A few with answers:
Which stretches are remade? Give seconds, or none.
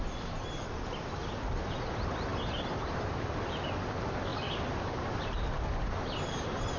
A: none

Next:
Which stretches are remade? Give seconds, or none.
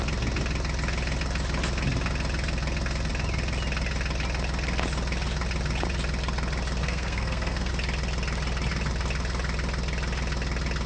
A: 6.8-7.7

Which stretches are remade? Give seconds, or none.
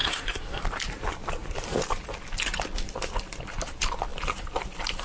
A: 0.0-0.6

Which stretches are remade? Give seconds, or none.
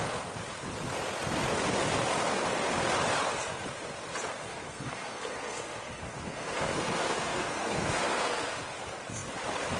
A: 4.4-8.6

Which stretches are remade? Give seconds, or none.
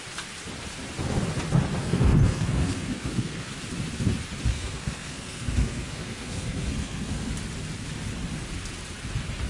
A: 1.8-3.5; 4.5-7.3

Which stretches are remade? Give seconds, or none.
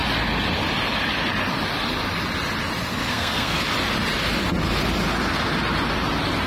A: 2.9-3.6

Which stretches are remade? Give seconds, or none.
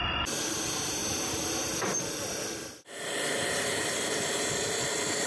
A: none